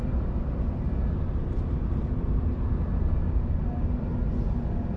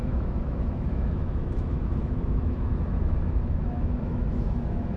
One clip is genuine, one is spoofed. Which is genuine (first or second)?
first